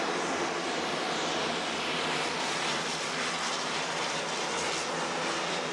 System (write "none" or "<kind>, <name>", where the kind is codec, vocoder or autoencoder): none